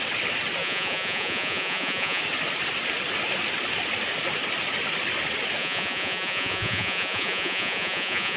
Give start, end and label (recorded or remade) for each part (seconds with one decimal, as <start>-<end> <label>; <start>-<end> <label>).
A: 0.0-0.6 recorded; 0.6-2.2 remade; 2.2-5.6 recorded; 5.6-8.4 remade

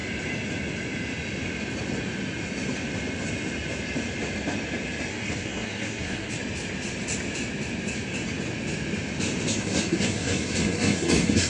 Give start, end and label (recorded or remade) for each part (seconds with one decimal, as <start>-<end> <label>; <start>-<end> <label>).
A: 0.0-5.1 recorded; 5.1-6.3 remade; 6.3-9.5 recorded; 9.5-11.5 remade